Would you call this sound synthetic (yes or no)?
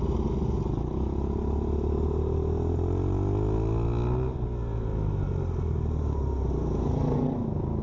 no